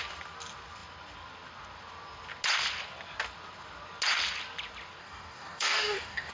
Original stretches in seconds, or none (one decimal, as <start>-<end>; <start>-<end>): 0.0-5.0